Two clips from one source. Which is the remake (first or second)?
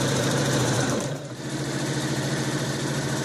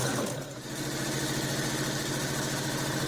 first